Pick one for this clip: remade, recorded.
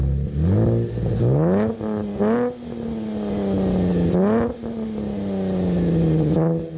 recorded